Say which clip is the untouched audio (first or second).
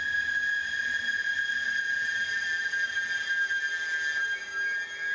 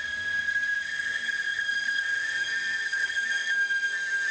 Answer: first